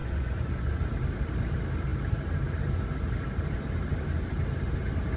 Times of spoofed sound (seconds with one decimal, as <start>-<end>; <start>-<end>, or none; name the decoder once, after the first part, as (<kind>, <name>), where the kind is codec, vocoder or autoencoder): 0.0-0.8 (vocoder, Vocos)